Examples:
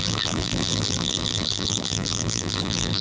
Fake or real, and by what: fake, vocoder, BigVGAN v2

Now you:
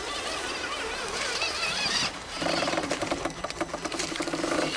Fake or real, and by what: fake, vocoder, BigVGAN v2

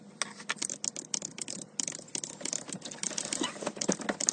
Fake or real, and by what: real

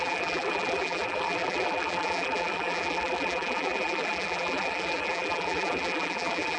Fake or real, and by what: fake, vocoder, BigVGAN v2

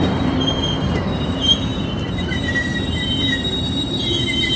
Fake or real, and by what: fake, vocoder, BigVGAN v2